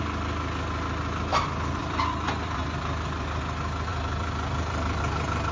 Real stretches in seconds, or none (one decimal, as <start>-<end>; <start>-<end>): 0.0-1.3; 3.4-3.9; 5.0-5.5